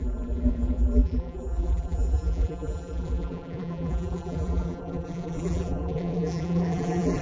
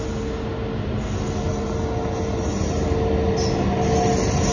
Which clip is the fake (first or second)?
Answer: first